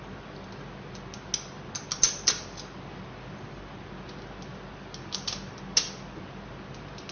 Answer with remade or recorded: recorded